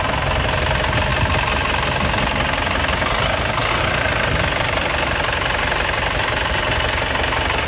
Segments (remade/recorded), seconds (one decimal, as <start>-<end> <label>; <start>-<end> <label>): 0.0-7.7 recorded